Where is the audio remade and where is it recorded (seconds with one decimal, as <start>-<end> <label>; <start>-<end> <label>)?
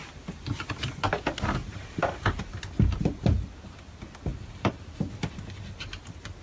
0.0-1.6 recorded; 1.6-2.6 remade; 2.6-4.3 recorded; 4.3-4.9 remade; 4.9-6.4 recorded